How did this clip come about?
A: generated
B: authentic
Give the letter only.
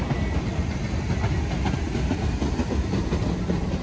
B